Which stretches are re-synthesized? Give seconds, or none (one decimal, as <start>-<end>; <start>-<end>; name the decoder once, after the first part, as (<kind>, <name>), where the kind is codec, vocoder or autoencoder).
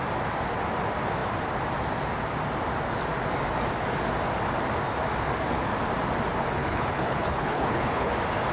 6.6-8.1 (codec, HILCodec)